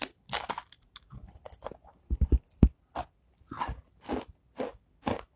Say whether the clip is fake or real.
real